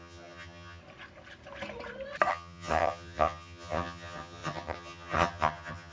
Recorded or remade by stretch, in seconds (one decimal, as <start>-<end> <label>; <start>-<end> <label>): 0.0-0.8 remade; 0.8-2.3 recorded; 2.3-5.9 remade